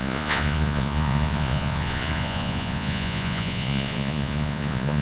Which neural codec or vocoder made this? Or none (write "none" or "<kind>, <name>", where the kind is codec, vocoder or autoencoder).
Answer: vocoder, Vocos